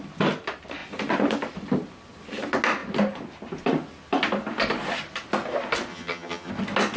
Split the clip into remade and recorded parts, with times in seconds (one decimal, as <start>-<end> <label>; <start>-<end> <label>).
0.0-5.9 recorded; 5.9-6.5 remade; 6.5-7.0 recorded